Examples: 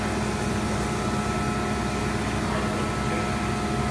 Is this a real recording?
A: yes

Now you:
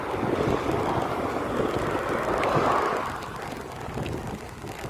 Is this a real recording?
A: yes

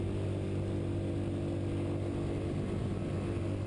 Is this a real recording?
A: yes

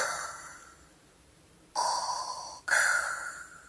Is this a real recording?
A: no